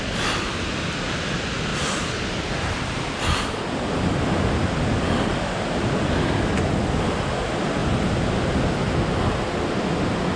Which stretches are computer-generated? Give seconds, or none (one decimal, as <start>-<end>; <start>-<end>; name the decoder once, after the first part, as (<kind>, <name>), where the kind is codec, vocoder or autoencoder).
none